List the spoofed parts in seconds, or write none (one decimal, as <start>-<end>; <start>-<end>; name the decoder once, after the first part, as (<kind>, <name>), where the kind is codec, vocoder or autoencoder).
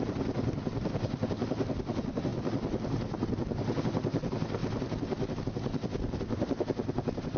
0.0-7.4 (vocoder, BigVGAN v2)